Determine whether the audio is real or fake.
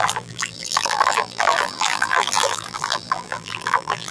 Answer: fake